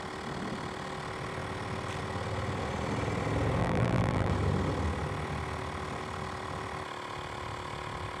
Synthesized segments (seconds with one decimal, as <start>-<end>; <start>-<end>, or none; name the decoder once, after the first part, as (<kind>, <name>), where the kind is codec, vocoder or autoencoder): 3.6-4.3 (vocoder, BigVGAN v2)

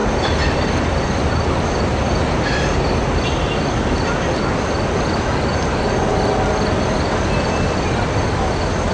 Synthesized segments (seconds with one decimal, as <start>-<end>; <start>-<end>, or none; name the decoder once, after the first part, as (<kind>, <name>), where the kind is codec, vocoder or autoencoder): 0.0-4.8 (vocoder, BigVGAN v2)

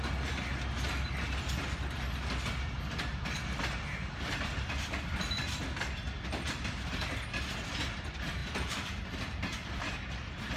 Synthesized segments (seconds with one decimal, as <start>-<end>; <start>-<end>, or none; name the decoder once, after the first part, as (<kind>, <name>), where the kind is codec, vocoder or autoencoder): 8.4-9.0 (vocoder, BigVGAN v2)